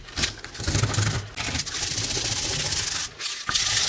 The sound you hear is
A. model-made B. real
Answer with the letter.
B